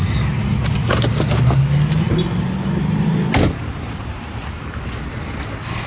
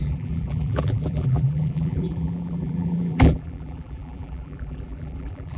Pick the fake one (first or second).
second